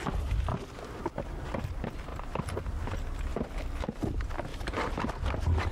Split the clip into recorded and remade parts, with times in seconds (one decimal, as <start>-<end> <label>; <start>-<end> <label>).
0.0-2.1 recorded; 2.1-2.8 remade; 2.8-4.5 recorded; 4.5-5.1 remade; 5.1-5.7 recorded